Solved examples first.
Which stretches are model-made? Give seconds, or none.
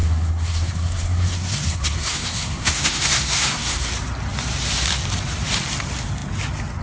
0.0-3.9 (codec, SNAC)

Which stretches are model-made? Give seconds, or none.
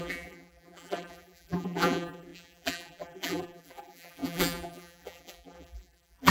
0.0-6.3 (vocoder, BigVGAN v2)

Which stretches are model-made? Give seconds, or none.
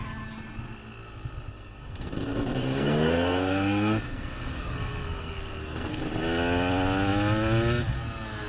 1.5-6.0 (codec, SNAC)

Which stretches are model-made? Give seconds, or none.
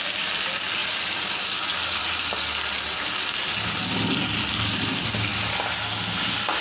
none